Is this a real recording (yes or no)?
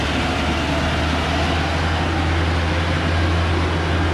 yes